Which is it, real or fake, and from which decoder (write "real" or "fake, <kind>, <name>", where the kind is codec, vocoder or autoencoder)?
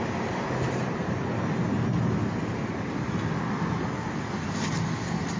real